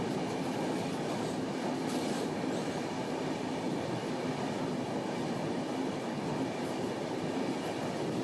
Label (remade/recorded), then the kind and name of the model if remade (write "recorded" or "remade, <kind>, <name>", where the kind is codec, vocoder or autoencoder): recorded